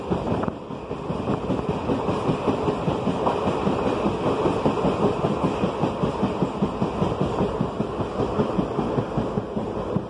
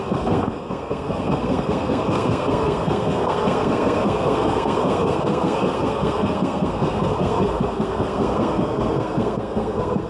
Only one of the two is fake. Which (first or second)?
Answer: second